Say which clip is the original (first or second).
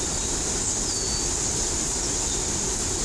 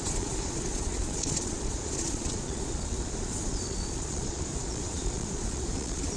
first